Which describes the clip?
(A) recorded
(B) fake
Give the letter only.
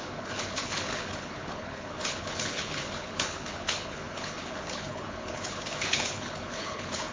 B